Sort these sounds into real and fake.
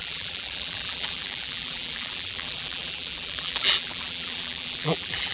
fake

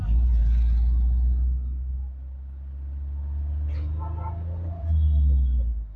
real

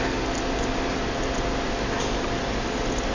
real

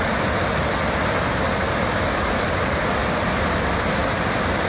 real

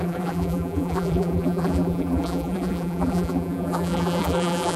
fake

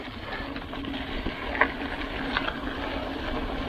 real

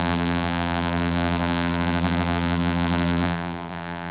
fake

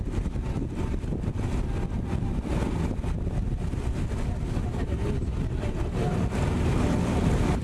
real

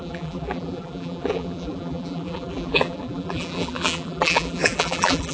fake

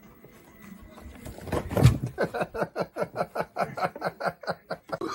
real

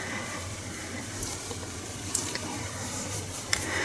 fake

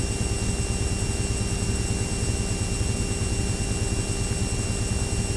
real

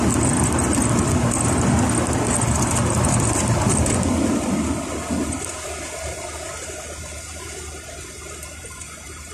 real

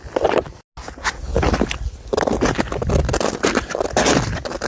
real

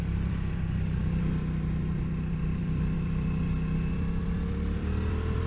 fake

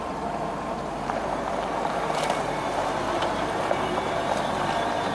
fake